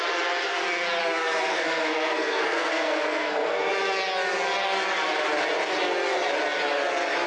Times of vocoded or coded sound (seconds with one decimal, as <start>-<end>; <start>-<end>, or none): 1.5-3.7